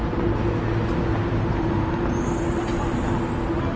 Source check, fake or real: real